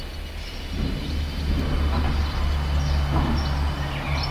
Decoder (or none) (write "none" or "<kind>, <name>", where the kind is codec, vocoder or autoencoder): none